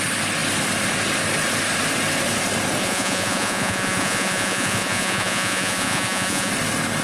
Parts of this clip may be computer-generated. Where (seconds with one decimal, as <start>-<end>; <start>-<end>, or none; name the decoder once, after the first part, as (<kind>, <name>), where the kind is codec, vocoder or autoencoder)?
2.8-6.5 (vocoder, Vocos)